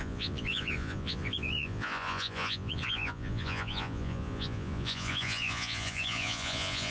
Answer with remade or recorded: remade